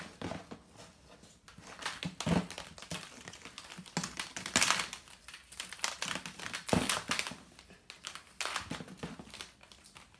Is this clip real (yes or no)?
yes